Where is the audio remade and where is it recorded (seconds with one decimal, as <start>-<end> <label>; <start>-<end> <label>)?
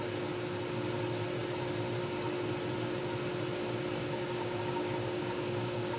0.0-4.0 recorded; 4.0-6.0 remade